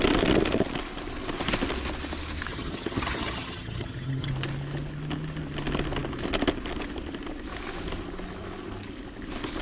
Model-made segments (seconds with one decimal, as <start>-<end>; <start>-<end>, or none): 2.5-4.3

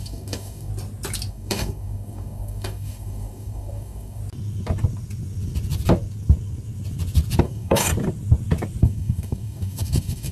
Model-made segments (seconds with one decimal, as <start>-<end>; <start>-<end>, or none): 0.0-0.7; 1.3-4.2; 7.4-7.9; 8.8-10.3

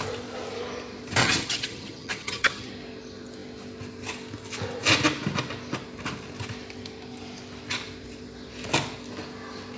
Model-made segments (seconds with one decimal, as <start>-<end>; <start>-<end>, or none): 1.2-2.7

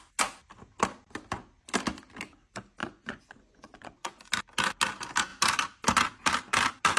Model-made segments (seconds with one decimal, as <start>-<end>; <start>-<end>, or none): 2.8-4.3